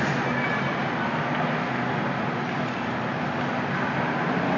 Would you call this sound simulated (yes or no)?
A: no